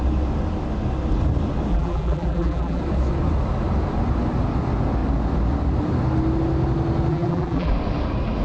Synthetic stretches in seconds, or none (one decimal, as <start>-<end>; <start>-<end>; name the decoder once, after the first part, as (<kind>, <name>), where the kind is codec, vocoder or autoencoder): 1.7-2.8 (vocoder, BigVGAN v2); 7.1-7.7